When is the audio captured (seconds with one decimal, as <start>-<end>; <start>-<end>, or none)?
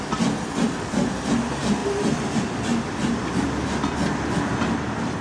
0.0-5.2